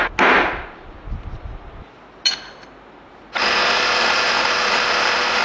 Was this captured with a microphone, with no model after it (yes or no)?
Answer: yes